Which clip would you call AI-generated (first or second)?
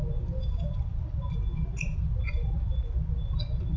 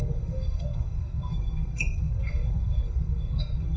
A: second